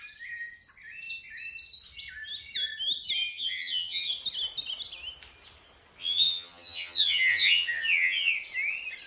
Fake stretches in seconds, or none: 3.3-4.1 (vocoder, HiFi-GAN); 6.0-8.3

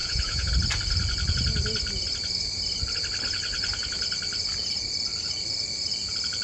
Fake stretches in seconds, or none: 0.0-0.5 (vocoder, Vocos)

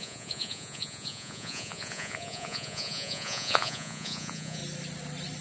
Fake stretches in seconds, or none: 0.0-4.6 (vocoder, Vocos)